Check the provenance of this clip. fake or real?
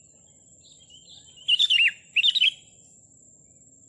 real